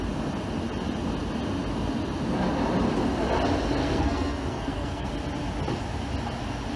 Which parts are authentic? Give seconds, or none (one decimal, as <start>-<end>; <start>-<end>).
0.0-3.8; 5.1-6.8